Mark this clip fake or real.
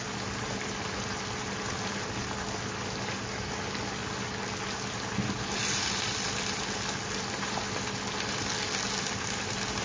real